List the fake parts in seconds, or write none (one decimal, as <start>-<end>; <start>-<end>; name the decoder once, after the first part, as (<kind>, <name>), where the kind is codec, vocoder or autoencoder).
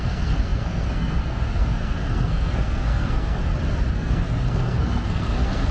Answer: 0.0-3.4 (codec, SNAC); 3.9-5.7